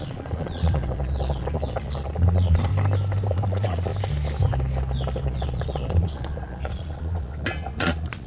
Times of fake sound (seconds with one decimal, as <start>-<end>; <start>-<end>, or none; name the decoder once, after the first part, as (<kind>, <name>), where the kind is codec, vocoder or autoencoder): 0.0-2.7 (vocoder, Vocos); 3.3-3.9; 5.2-8.3